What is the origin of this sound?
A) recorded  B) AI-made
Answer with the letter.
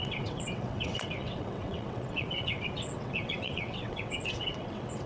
B